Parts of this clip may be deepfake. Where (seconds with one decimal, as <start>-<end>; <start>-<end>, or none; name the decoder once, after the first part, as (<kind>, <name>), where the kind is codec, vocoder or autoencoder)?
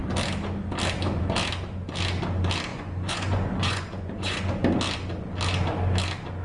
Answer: 2.7-4.4 (vocoder, Vocos)